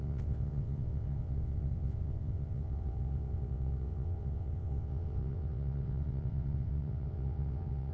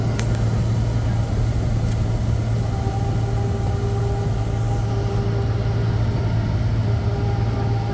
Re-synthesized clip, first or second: first